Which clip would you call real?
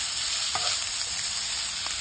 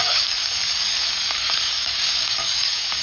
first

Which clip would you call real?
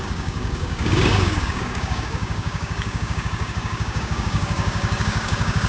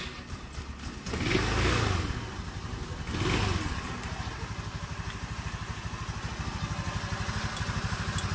second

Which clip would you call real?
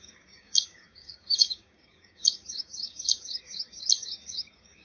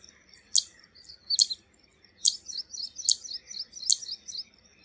second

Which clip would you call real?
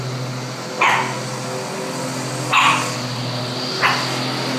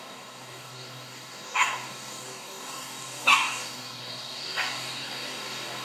first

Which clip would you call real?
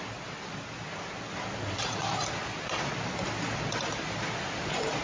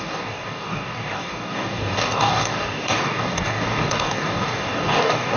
first